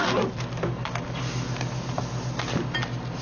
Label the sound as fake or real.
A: real